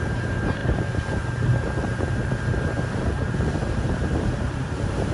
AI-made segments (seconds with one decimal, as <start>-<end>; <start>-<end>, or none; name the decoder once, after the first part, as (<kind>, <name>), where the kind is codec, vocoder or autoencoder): 0.0-5.1 (vocoder, BigVGAN v2)